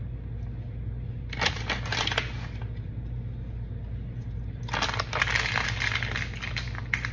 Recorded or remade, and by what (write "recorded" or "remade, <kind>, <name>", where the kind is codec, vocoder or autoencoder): recorded